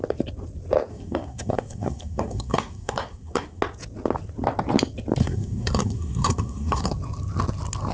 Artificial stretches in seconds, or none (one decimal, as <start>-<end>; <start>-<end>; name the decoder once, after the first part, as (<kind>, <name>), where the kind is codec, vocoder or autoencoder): 0.9-3.6 (codec, SNAC); 5.2-6.9